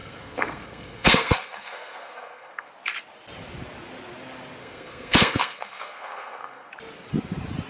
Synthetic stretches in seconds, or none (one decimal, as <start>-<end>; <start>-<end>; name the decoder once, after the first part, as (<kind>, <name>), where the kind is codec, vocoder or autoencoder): 0.0-2.7 (codec, SNAC); 4.6-6.7